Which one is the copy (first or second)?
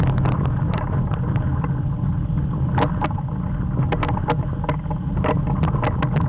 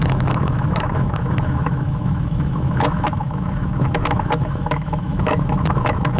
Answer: second